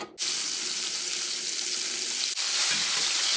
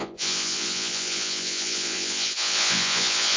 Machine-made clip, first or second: second